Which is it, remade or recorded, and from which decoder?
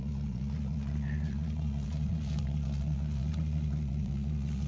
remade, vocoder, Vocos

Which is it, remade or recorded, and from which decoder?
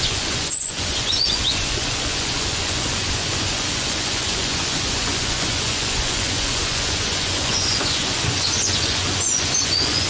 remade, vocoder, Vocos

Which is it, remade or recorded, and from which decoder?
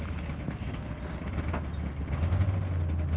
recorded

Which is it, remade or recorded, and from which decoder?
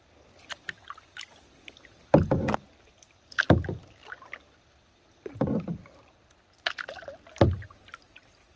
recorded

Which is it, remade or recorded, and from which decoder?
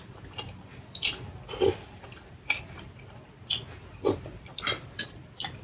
recorded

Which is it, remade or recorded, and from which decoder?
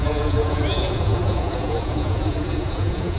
remade, vocoder, Vocos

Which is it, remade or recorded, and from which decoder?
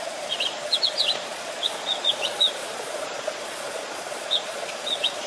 remade, vocoder, Vocos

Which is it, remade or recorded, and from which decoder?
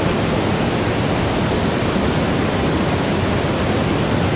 recorded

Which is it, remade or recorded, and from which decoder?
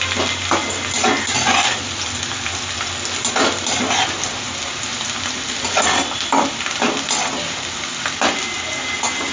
recorded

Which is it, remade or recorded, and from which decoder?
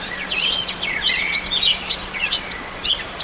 remade, vocoder, Vocos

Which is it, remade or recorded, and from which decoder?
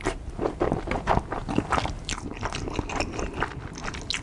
recorded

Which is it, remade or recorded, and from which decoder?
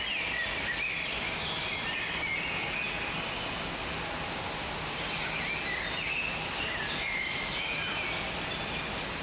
recorded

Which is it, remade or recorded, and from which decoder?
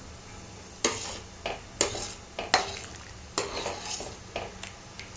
recorded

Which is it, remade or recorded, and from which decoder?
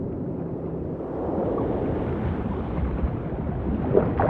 recorded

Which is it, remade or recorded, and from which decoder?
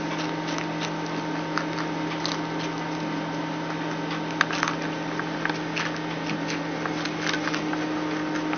recorded